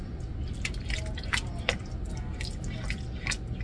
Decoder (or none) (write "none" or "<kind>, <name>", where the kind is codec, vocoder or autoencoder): none